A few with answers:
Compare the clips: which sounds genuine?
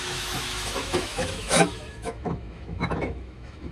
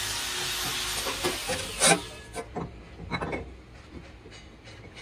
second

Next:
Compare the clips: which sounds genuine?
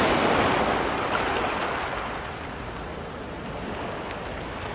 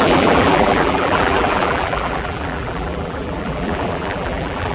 first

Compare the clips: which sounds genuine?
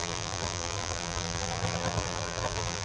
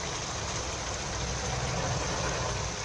second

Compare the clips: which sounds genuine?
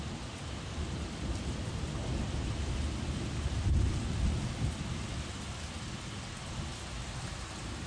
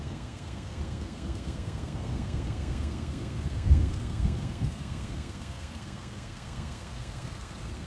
first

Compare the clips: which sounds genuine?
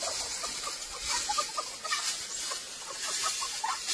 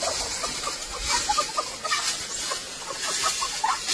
second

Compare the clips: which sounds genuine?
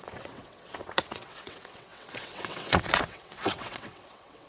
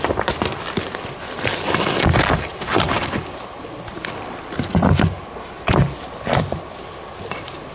second